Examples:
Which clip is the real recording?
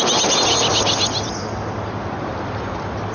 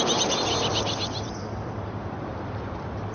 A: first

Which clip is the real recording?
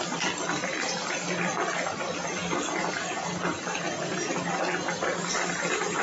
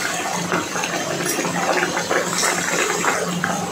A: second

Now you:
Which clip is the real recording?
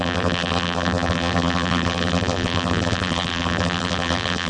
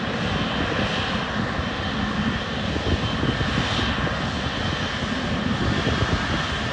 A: second